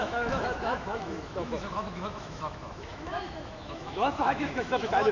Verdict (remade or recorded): remade